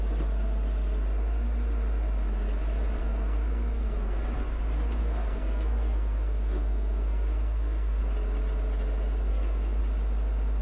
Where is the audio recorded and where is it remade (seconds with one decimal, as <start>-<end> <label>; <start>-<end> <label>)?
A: 0.0-3.0 recorded; 3.0-4.2 remade; 4.2-5.0 recorded; 5.0-8.0 remade; 8.0-9.3 recorded; 9.3-9.8 remade; 9.8-10.6 recorded